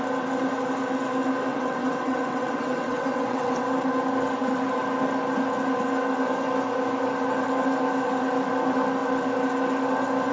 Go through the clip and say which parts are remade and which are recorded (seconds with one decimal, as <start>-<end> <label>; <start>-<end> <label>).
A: 0.0-1.5 recorded; 1.5-3.6 remade; 3.6-10.3 recorded